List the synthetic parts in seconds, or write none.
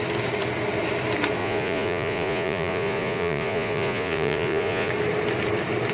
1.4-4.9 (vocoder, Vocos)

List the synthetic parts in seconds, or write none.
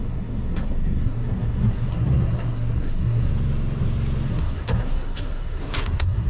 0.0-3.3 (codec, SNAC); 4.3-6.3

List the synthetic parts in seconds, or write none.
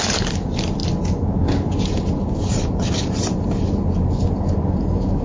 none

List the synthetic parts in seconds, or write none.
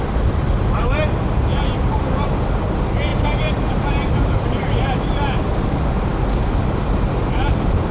0.0-7.9 (vocoder, BigVGAN v2)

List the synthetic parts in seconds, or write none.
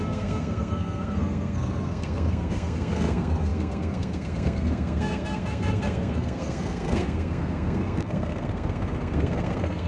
0.0-9.9 (codec, SNAC)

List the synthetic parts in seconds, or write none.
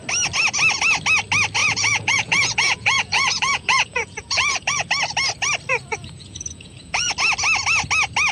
1.6-4.9 (vocoder, Vocos); 5.7-7.1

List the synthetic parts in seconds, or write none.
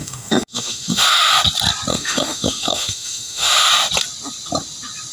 0.0-1.3 (autoencoder, DAC-VAE); 1.9-3.7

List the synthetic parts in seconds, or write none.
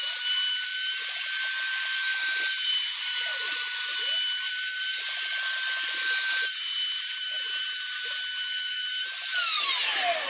0.0-0.7 (vocoder, BigVGAN v2); 2.5-10.3